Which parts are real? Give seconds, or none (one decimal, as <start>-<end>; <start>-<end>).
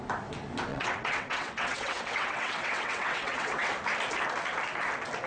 0.0-0.7; 3.7-5.3